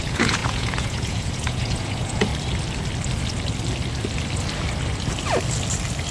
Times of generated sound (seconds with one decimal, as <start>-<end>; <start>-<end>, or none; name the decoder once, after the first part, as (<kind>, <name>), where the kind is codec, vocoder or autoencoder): 0.0-2.3 (vocoder, Vocos)